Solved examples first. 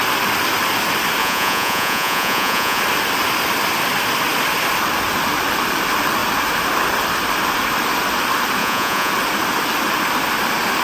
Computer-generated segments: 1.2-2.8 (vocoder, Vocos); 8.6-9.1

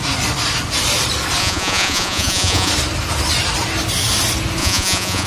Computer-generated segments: 1.4-2.7 (vocoder, Vocos); 4.6-5.3

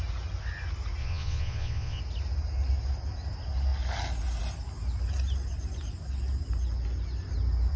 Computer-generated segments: 1.0-2.0 (vocoder, Vocos)

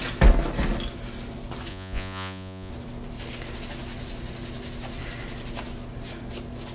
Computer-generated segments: 1.7-2.7 (vocoder, Vocos)

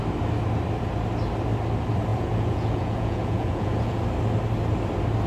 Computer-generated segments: 2.1-4.0 (vocoder, Vocos)

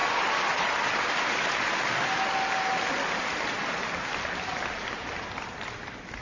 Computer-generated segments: none

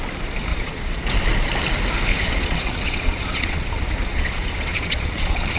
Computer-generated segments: 0.5-1.0 (vocoder, Vocos); 2.1-5.6